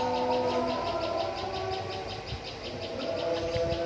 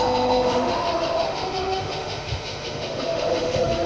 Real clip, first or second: first